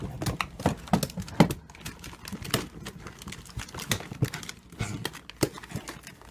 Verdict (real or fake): real